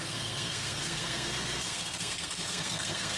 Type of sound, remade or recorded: remade